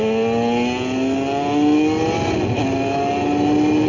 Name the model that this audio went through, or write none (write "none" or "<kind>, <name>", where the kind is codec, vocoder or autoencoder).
none